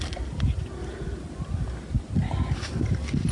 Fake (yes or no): no